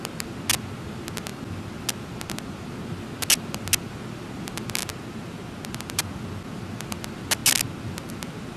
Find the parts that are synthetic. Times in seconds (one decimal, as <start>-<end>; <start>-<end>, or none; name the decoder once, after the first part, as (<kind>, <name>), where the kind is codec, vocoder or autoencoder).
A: none